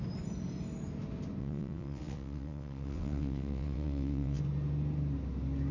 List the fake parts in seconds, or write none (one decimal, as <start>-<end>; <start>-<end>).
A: 1.4-4.4